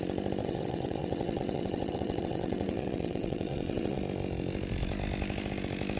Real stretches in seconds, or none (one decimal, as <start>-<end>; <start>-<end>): 0.0-0.4; 4.0-6.0